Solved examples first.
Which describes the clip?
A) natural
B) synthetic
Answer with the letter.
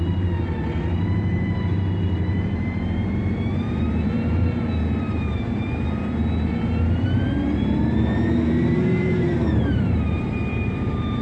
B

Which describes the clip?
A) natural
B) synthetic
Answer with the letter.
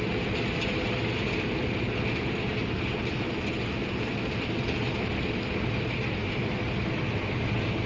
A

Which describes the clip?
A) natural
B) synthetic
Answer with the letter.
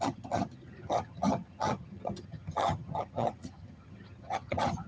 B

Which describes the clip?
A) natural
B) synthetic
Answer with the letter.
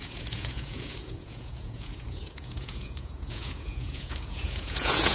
B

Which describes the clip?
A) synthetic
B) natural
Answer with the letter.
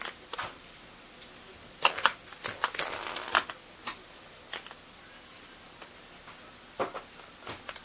B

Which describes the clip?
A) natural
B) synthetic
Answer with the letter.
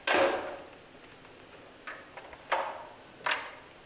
A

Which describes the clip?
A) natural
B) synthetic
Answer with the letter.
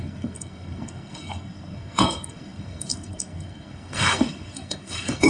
B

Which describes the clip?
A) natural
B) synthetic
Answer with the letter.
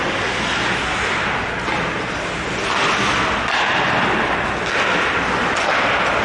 A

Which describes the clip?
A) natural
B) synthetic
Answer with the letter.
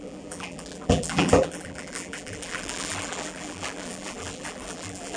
B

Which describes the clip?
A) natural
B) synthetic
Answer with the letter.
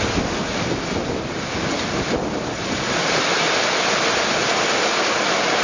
A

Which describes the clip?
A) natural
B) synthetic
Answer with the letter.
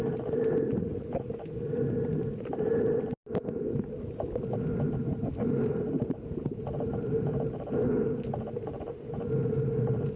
A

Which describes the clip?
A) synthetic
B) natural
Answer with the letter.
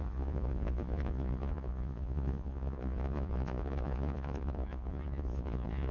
A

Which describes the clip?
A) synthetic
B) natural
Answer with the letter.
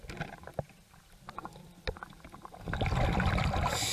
B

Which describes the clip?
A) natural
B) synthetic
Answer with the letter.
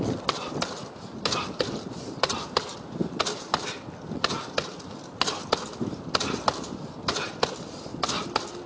A